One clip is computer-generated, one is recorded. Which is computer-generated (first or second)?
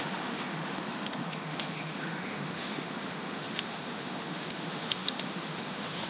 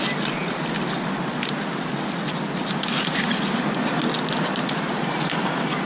first